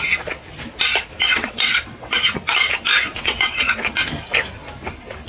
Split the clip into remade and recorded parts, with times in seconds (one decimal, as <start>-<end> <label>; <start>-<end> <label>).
0.0-1.3 recorded; 1.3-2.1 remade; 2.1-3.1 recorded; 3.1-3.9 remade; 3.9-5.3 recorded